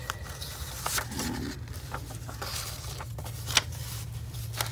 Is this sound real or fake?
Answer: real